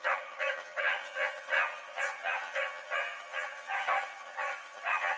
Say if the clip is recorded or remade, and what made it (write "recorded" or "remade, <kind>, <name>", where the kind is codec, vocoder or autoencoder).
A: remade, vocoder, HiFi-GAN